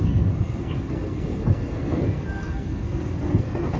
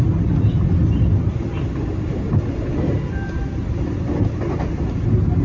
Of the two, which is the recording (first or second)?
second